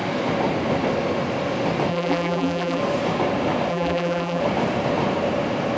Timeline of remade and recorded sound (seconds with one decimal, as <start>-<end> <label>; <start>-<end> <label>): 0.0-1.9 recorded; 1.9-2.8 remade; 2.8-3.7 recorded; 3.7-4.4 remade; 4.4-5.8 recorded